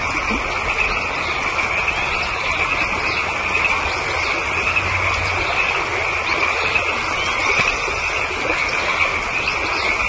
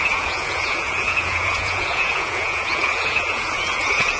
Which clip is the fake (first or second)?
second